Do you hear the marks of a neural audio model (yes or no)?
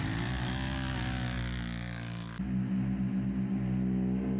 no